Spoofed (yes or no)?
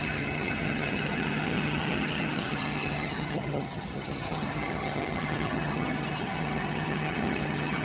yes